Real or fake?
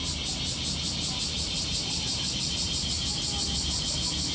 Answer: real